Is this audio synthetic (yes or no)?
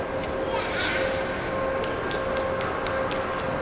no